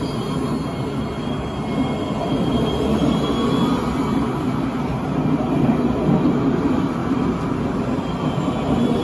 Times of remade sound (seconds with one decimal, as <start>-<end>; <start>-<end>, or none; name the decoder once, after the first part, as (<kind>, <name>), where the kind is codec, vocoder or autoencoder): none